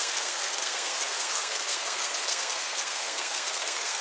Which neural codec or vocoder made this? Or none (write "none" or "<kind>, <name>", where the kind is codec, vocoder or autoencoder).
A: codec, SNAC